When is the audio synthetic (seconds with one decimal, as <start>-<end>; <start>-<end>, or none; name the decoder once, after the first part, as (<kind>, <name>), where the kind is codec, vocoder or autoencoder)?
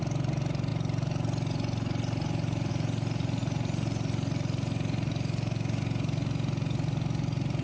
none